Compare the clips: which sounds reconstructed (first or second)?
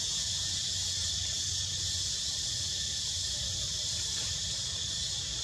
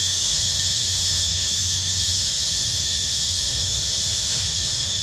second